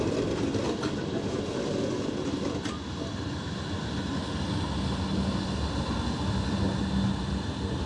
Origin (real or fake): real